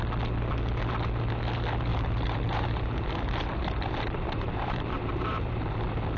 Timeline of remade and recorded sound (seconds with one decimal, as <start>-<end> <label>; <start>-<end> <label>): 0.0-1.9 recorded; 1.9-5.6 remade; 5.6-6.2 recorded